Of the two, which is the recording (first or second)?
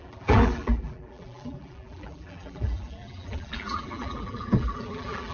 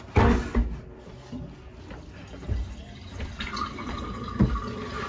second